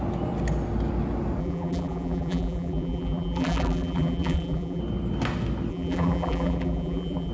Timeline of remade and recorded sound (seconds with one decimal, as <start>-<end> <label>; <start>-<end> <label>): 0.0-1.4 recorded; 1.4-4.8 remade; 4.8-5.7 recorded; 5.7-7.3 remade

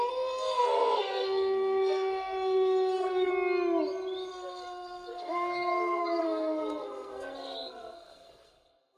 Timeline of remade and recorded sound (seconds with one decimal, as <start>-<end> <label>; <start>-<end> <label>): 0.0-3.3 remade; 3.3-4.3 recorded; 4.3-9.0 remade

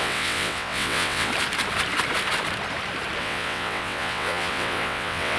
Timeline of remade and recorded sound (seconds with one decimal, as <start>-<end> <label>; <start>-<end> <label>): 0.0-1.3 remade; 1.3-3.2 recorded; 3.2-5.4 remade

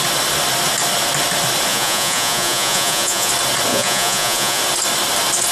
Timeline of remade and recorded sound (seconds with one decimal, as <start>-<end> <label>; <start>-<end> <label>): 0.0-1.7 recorded; 1.7-3.3 remade; 3.3-3.7 recorded; 3.7-4.6 remade; 4.6-5.5 recorded

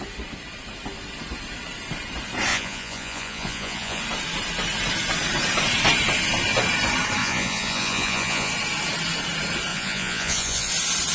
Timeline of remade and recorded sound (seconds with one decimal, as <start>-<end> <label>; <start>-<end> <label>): 0.0-2.5 recorded; 2.5-4.0 remade; 4.0-7.2 recorded; 7.2-8.5 remade; 8.5-9.7 recorded; 9.7-10.7 remade; 10.7-11.1 recorded